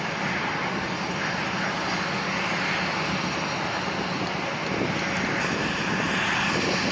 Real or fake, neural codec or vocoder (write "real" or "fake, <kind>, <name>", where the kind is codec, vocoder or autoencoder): real